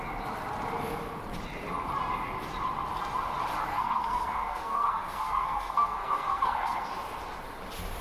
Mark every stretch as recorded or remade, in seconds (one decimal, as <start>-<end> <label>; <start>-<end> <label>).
0.0-3.7 recorded; 3.7-6.9 remade; 6.9-8.0 recorded